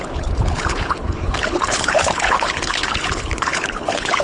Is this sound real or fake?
fake